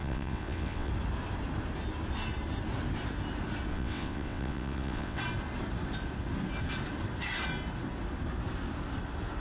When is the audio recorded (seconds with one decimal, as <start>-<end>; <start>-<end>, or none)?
0.9-3.7; 5.2-9.4